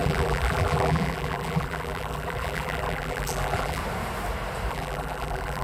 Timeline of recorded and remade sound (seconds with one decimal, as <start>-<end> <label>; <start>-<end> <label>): 0.0-3.8 remade; 3.8-4.7 recorded; 4.7-5.6 remade